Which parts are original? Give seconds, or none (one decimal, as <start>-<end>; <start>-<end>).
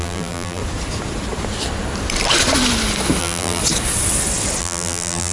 0.6-3.2; 3.6-4.6